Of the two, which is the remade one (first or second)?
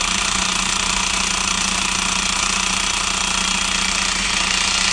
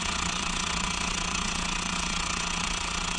second